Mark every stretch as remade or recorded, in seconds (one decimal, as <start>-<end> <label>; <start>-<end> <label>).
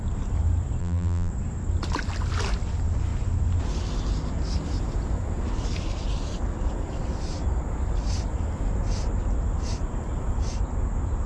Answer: 0.0-0.8 recorded; 0.8-1.3 remade; 1.3-11.3 recorded